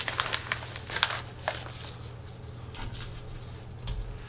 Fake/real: real